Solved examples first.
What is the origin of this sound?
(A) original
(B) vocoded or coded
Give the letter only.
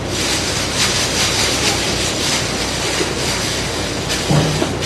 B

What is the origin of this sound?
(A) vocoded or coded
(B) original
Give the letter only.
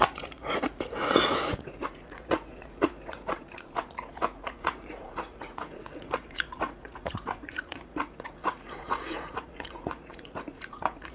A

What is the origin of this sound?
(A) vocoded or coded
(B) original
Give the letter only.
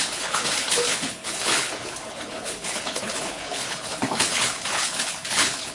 A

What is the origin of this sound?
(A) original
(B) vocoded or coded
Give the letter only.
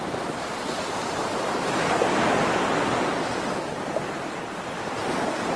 A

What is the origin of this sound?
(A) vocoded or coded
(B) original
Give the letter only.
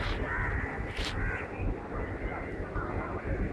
B